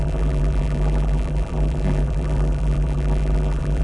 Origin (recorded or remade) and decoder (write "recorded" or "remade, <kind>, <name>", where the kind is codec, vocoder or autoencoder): remade, vocoder, BigVGAN v2